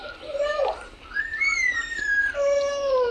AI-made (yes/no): no